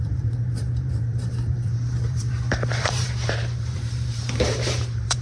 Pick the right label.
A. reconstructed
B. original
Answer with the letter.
A